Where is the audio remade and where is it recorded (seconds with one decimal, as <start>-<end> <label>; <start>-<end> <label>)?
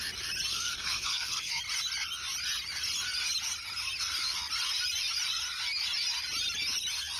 0.0-0.5 recorded; 0.5-1.6 remade; 1.6-7.2 recorded